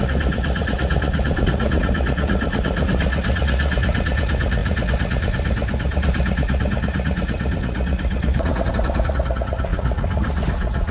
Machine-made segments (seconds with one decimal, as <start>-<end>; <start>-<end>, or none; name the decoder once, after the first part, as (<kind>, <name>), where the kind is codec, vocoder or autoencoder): 0.0-10.9 (vocoder, Vocos)